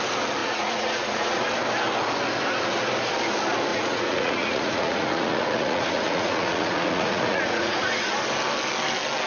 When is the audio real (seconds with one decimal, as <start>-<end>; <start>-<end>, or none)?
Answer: 0.0-0.4; 1.5-3.7; 8.1-9.3